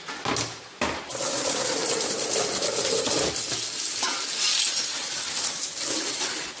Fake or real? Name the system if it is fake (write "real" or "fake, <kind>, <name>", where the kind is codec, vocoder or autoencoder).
real